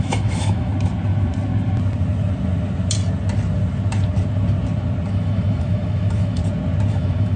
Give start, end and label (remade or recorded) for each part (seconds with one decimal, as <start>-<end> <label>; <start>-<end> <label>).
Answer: 0.0-0.7 remade; 0.7-5.1 recorded; 5.1-6.4 remade; 6.4-6.9 recorded; 6.9-7.4 remade